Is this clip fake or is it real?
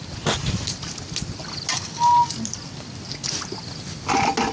real